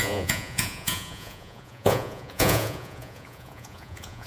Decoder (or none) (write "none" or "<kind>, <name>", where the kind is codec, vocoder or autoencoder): vocoder, Vocos